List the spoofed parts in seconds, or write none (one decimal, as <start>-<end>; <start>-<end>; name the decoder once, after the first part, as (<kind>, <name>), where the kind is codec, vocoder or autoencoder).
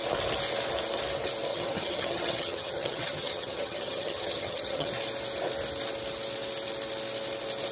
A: 1.5-4.9 (vocoder, HiFi-GAN)